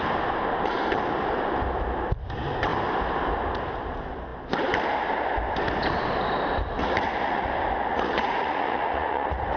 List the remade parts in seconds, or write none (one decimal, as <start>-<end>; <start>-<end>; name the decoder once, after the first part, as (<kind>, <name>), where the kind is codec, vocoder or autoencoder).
6.8-7.5 (vocoder, Vocos); 7.9-9.6

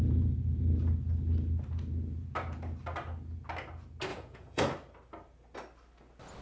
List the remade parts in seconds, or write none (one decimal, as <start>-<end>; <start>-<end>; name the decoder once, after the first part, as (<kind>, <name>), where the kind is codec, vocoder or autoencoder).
4.1-4.6 (vocoder, Vocos)

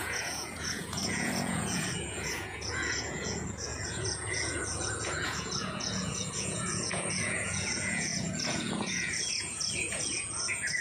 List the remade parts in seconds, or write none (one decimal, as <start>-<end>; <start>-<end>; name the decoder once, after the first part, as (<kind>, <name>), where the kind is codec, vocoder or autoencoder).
0.0-10.8 (vocoder, Vocos)

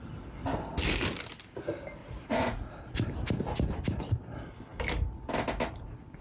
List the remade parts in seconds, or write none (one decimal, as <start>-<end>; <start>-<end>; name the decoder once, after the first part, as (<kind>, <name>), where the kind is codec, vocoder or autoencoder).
2.0-2.7 (vocoder, Vocos)

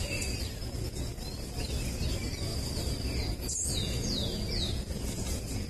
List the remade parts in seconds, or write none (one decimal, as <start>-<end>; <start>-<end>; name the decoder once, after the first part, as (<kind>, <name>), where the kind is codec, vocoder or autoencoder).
0.0-1.1 (vocoder, Vocos); 2.1-2.5; 3.2-5.7

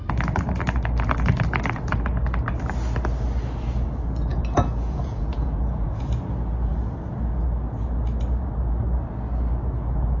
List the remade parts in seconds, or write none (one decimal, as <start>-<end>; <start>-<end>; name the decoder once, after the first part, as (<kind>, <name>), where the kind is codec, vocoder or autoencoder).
4.3-6.3 (vocoder, Vocos)

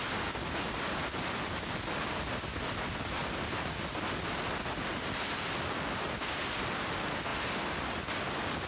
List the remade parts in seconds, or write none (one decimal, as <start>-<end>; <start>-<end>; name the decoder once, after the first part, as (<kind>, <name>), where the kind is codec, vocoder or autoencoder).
none

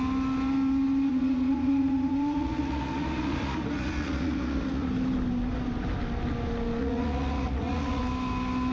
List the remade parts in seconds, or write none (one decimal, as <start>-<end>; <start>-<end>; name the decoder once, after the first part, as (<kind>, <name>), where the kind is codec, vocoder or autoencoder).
1.1-4.9 (vocoder, Vocos); 6.8-8.0